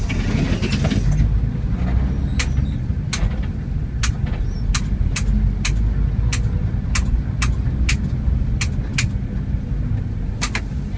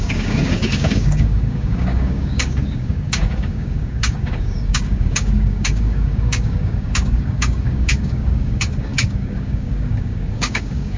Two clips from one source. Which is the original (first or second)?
first